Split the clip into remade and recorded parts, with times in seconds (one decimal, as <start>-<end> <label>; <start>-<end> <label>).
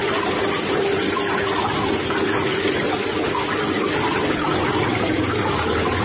0.0-3.6 remade; 3.6-4.7 recorded; 4.7-5.3 remade; 5.3-6.0 recorded